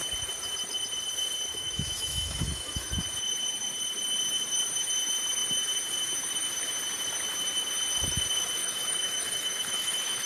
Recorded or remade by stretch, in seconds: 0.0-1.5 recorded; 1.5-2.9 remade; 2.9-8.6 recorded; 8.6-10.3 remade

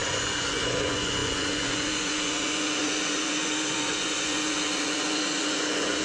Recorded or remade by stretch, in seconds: 0.0-6.0 remade

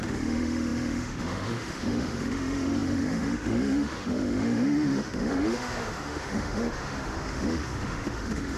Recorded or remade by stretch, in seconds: 0.0-8.6 remade